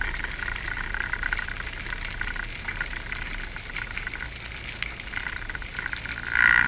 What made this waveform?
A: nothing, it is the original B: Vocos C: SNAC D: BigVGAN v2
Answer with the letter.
A